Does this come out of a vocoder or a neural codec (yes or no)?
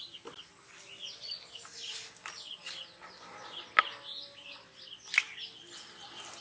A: no